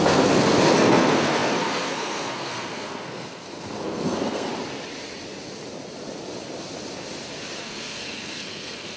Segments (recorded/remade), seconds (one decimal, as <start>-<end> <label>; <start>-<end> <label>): 0.0-4.5 remade; 4.5-7.6 recorded; 7.6-9.0 remade